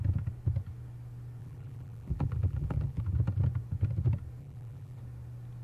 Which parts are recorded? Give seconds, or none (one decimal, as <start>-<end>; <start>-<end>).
0.0-1.4; 3.0-4.4; 5.0-5.6